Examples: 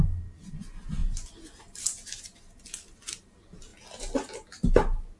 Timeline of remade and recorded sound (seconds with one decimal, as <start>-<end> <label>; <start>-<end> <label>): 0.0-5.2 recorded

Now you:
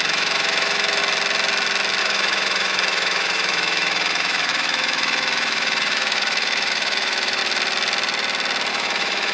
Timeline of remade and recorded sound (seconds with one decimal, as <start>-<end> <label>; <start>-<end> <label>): 0.0-1.0 remade; 1.0-2.0 recorded; 2.0-7.4 remade; 7.4-8.7 recorded; 8.7-9.3 remade

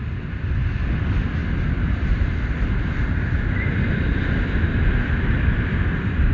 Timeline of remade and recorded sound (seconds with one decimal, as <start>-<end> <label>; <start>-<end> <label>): 0.0-6.3 recorded

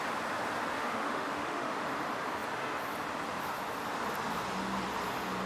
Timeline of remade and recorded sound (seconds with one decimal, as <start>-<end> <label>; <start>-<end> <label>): 0.0-0.7 recorded; 0.7-1.8 remade; 1.8-5.5 recorded